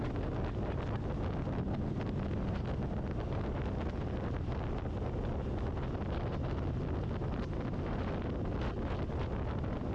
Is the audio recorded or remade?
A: recorded